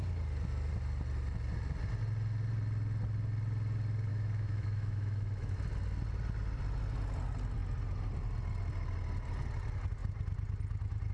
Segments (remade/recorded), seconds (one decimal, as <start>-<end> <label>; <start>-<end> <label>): 0.0-4.1 recorded; 4.1-5.6 remade; 5.6-11.1 recorded

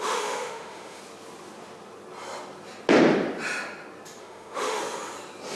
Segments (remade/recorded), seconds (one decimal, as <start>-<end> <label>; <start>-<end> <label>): 0.0-1.0 remade; 1.0-4.2 recorded; 4.2-4.8 remade; 4.8-5.6 recorded

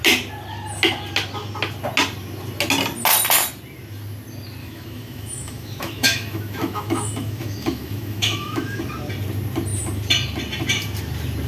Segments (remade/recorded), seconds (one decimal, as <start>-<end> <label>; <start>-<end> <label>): 0.0-4.6 recorded; 4.6-8.8 remade; 8.8-11.5 recorded